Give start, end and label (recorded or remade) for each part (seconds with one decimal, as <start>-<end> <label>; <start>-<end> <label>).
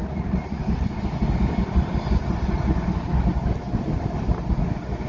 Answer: 0.0-0.6 remade; 0.6-5.1 recorded